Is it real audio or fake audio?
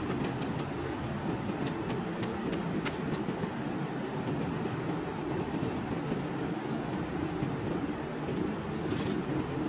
real